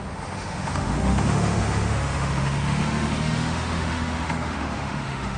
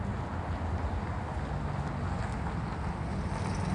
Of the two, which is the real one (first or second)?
second